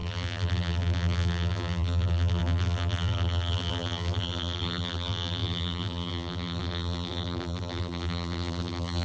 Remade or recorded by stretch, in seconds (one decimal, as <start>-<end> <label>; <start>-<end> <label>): 0.0-9.0 remade

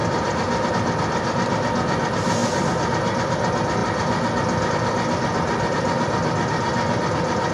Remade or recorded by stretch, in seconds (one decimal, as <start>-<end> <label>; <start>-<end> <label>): 0.0-7.5 recorded

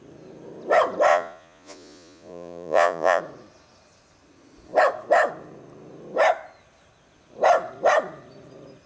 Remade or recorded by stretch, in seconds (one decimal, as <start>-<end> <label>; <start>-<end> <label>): 0.0-1.1 recorded; 1.1-3.2 remade; 3.2-8.9 recorded

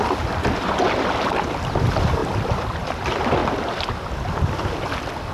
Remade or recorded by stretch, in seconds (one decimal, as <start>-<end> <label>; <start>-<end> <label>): 0.0-5.3 recorded

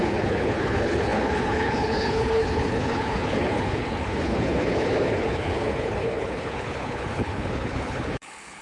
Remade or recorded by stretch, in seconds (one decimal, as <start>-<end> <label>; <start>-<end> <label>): 0.0-8.6 remade

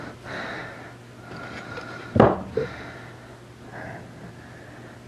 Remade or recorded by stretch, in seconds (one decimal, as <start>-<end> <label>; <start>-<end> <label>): 0.0-5.1 recorded

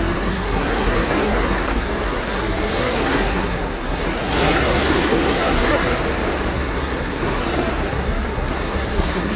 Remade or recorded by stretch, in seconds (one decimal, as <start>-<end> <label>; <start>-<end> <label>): 0.0-6.0 remade; 6.0-6.5 recorded; 6.5-9.4 remade

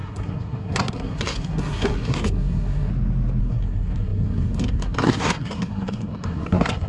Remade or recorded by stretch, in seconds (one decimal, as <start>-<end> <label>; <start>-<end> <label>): 0.0-2.9 remade; 2.9-3.4 recorded; 3.4-6.9 remade